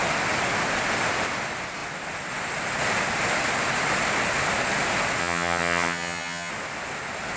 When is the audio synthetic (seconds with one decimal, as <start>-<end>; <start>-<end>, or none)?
5.2-6.5